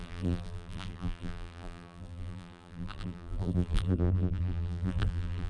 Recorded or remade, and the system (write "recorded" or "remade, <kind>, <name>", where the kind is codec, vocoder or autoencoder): remade, vocoder, BigVGAN v2